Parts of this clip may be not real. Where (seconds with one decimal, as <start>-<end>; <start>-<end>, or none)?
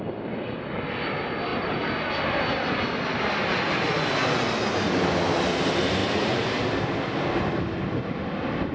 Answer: 1.5-2.1